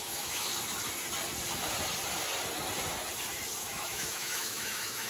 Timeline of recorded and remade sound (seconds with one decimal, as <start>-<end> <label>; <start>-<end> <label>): 0.0-0.5 remade; 0.5-3.6 recorded; 3.6-5.1 remade